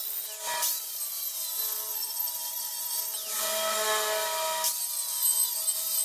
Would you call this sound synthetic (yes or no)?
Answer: no